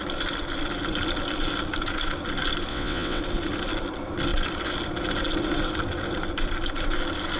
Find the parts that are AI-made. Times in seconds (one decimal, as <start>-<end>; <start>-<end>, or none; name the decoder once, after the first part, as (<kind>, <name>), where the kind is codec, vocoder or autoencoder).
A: 2.7-3.2 (vocoder, WaveNeXt)